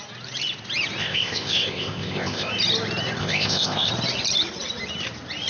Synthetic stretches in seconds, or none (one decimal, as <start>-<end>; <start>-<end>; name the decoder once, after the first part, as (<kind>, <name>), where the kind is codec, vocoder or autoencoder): 1.0-2.5 (codec, ZipCodec); 3.2-3.9